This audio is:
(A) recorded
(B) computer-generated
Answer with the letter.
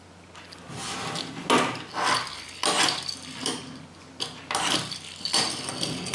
A